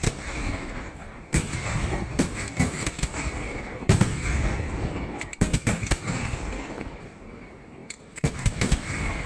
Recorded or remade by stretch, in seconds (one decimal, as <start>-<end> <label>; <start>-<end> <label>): 0.0-9.3 remade